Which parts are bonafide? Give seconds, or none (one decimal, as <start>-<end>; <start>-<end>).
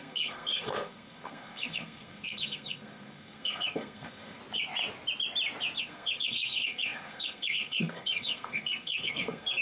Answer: 4.4-5.8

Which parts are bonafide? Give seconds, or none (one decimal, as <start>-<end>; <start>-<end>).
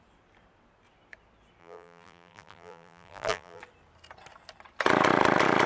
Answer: 0.0-1.6; 3.6-5.7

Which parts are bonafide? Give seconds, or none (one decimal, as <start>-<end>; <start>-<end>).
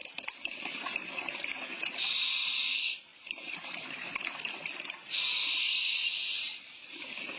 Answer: 2.2-3.1; 4.1-6.5; 7.0-7.4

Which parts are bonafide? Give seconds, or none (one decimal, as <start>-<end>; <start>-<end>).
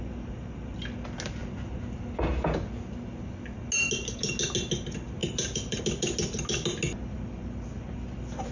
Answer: 0.0-5.2; 5.8-8.5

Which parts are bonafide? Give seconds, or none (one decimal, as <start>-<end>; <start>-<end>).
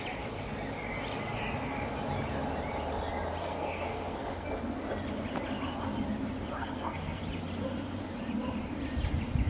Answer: 0.0-3.4; 4.5-6.6; 7.2-9.5